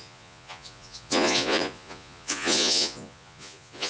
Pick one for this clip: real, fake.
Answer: fake